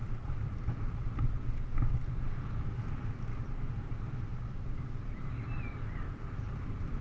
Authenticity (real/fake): real